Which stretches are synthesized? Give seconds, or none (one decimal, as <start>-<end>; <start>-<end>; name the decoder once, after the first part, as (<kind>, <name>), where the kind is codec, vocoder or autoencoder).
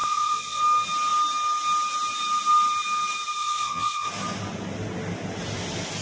0.0-0.6 (vocoder, Vocos); 3.4-4.1